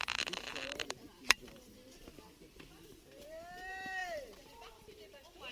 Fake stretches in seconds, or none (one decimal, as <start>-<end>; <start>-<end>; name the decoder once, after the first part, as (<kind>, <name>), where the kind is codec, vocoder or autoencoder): 0.0-1.8 (vocoder, BigVGAN v2); 2.7-5.5